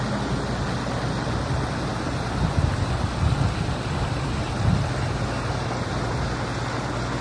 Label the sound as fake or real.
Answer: real